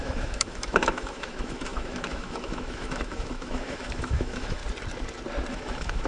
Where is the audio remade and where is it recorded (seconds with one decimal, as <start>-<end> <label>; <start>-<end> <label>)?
0.0-4.6 remade; 4.6-5.5 recorded; 5.5-6.1 remade